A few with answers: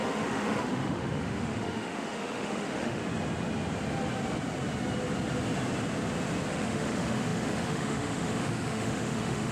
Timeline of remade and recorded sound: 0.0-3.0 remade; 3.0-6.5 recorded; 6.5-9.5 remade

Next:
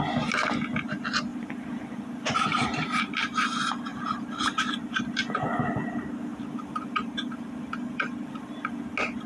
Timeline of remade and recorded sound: 0.0-1.3 recorded; 1.3-3.1 remade; 3.1-3.9 recorded; 3.9-5.4 remade; 5.4-6.3 recorded; 6.3-8.8 remade; 8.8-9.3 recorded

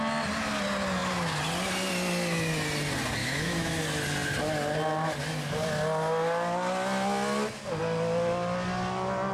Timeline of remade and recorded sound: 0.0-3.2 recorded; 3.2-3.8 remade; 3.8-9.3 recorded